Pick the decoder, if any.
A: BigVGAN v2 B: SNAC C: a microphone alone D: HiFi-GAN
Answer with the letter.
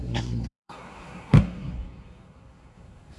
B